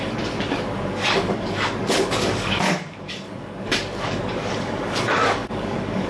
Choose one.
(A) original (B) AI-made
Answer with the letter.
B